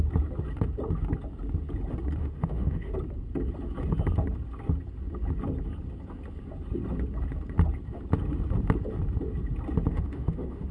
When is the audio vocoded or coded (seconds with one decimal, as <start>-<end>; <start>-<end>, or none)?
2.2-2.9; 9.9-10.7

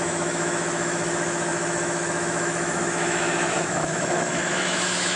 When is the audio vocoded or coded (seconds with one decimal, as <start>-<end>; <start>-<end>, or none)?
0.0-5.2

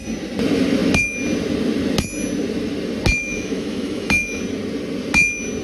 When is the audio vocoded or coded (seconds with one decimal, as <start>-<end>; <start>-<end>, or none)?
3.2-4.4

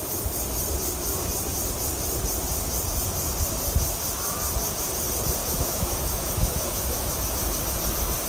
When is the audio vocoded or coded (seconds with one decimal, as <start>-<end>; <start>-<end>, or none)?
5.4-7.2

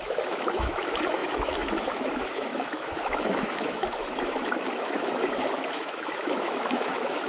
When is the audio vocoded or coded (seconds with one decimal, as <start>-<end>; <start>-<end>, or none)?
0.0-7.3

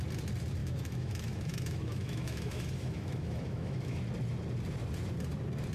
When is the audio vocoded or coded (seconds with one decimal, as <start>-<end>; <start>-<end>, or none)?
0.6-4.0

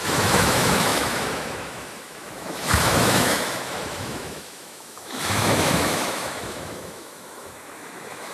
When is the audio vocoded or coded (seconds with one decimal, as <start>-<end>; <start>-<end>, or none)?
0.0-8.3

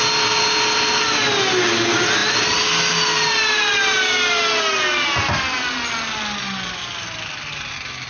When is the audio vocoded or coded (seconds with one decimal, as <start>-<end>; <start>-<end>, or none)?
none